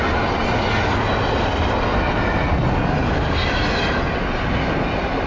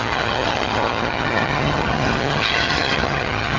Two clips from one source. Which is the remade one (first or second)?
second